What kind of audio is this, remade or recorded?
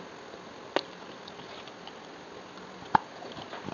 recorded